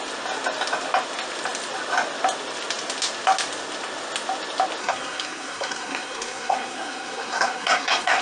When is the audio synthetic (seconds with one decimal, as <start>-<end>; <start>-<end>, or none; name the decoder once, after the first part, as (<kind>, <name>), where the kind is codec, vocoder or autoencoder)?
4.8-8.2 (codec, SNAC)